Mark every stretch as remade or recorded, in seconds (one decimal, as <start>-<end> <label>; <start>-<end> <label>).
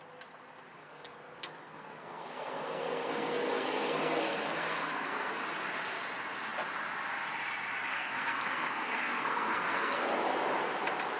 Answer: 0.0-0.8 recorded; 0.8-5.3 remade; 5.3-7.9 recorded; 7.9-10.1 remade; 10.1-11.2 recorded